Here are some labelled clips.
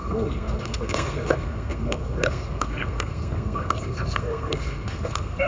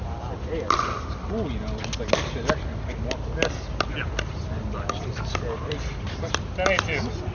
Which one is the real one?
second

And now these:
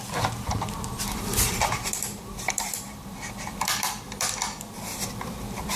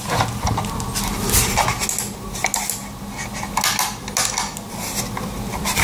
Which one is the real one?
second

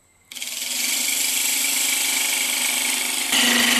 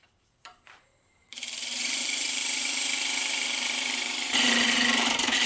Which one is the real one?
first